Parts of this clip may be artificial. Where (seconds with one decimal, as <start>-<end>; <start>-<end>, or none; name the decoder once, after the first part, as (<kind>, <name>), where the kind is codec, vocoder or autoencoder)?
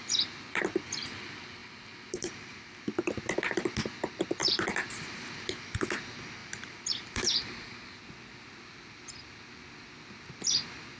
0.0-0.6 (vocoder, BigVGAN v2); 1.6-2.7; 4.4-5.5; 6.4-8.0